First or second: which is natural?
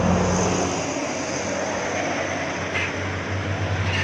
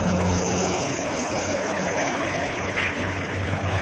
first